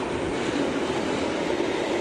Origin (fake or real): real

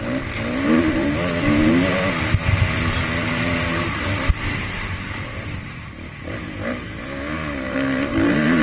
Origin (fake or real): fake